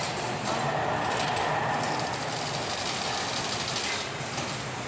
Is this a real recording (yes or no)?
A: yes